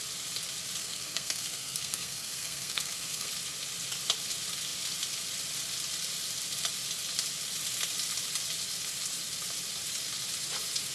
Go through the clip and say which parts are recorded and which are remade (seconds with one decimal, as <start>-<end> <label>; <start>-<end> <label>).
0.0-0.8 recorded; 0.8-3.3 remade; 3.3-10.9 recorded